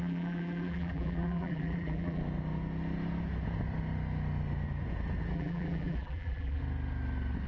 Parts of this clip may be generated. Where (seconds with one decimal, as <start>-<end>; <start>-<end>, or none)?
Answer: 0.0-2.2; 5.3-6.6